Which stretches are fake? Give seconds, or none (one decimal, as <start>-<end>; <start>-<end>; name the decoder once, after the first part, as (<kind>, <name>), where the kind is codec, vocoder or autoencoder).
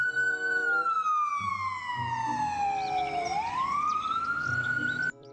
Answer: 0.0-0.6 (vocoder, BigVGAN v2); 1.5-5.3